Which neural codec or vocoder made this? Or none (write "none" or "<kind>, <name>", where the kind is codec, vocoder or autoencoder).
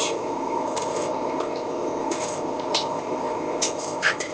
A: codec, ZipCodec